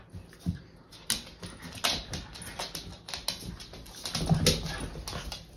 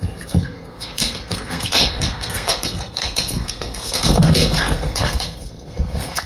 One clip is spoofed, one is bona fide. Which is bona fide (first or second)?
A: first